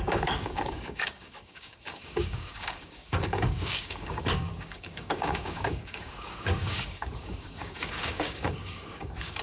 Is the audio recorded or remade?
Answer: remade